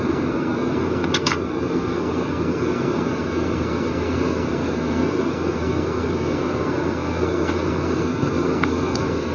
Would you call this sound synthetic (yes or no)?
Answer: yes